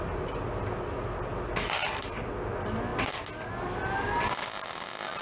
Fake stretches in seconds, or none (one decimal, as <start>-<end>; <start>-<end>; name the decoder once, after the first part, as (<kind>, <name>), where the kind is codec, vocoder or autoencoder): none